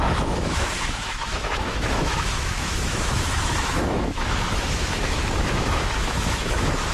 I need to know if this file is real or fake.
fake